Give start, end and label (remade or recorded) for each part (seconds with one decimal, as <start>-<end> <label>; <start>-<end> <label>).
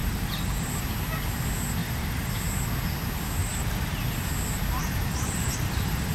0.0-0.7 remade; 0.7-1.8 recorded; 1.8-2.3 remade; 2.3-3.4 recorded; 3.4-4.0 remade; 4.0-4.8 recorded; 4.8-6.1 remade